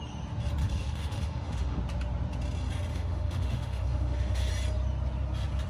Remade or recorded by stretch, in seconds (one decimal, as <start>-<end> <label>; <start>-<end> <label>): 0.0-0.6 recorded; 0.6-1.8 remade; 1.8-2.9 recorded; 2.9-4.5 remade; 4.5-5.7 recorded